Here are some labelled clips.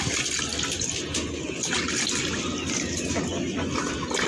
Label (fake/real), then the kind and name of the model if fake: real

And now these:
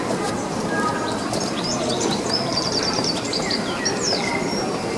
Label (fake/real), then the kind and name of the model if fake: fake, vocoder, BigVGAN v2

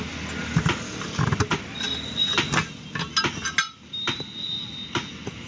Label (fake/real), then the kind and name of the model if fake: real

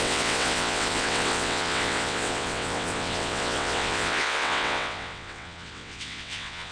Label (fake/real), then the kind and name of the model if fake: fake, vocoder, WaveNeXt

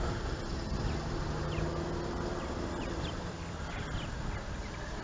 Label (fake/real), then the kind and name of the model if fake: real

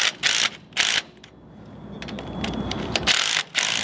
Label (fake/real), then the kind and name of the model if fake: real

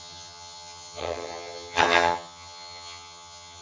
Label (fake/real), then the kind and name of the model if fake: fake, vocoder, HiFi-GAN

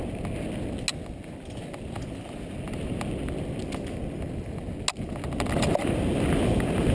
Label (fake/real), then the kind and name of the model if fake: real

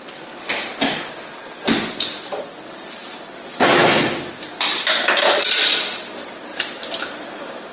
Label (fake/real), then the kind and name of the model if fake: real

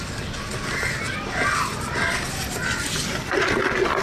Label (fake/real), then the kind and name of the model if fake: real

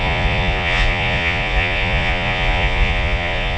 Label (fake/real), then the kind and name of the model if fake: fake, vocoder, Vocos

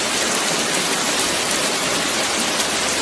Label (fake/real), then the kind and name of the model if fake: real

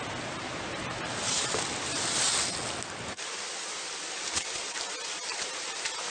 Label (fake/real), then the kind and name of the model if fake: real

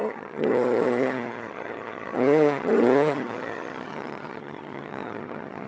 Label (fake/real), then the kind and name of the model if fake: fake, vocoder, HiFi-GAN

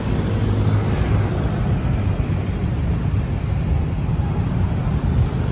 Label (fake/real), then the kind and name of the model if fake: real